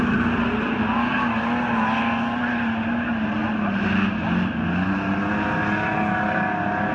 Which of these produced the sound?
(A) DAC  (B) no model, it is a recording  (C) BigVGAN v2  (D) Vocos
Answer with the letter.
B